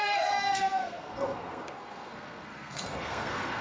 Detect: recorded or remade remade